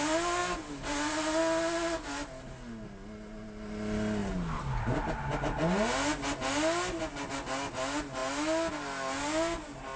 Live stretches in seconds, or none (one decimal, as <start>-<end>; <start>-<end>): 0.0-10.0